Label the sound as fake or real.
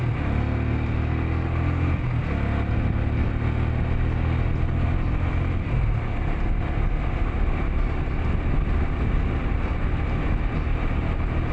real